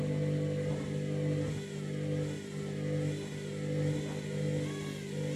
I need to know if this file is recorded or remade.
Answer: recorded